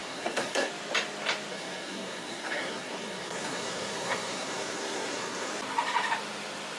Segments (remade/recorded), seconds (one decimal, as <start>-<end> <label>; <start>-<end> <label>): 0.0-0.7 remade; 0.7-1.5 recorded; 1.5-5.5 remade; 5.5-6.8 recorded